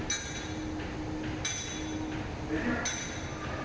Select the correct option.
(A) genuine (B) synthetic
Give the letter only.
A